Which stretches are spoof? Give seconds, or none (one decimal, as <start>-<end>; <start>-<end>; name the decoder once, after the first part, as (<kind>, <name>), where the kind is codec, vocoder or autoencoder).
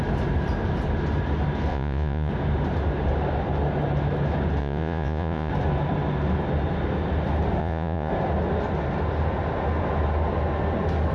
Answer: 1.7-2.3 (vocoder, Vocos); 4.6-5.5; 7.6-8.1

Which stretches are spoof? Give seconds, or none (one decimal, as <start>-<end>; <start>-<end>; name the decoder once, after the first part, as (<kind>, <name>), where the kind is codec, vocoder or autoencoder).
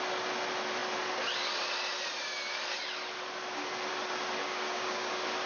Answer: 4.4-5.1 (codec, DAC)